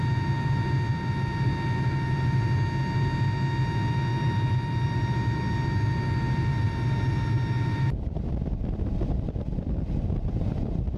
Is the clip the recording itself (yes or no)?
yes